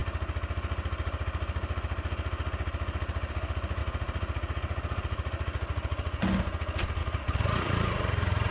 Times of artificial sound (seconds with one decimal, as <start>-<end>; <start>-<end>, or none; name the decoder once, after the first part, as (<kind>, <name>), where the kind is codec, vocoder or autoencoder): 3.8-6.2 (vocoder, Vocos); 7.0-8.5